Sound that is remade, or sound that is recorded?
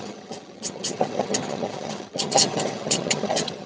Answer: remade